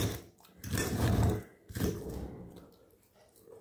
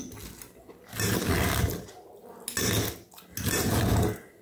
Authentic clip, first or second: second